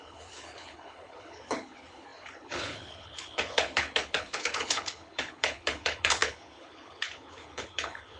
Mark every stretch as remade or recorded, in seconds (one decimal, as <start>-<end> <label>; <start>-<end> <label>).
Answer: 0.0-8.2 remade